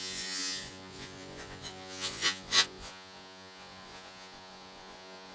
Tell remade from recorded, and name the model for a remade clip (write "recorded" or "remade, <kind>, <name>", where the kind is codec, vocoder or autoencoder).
remade, vocoder, Vocos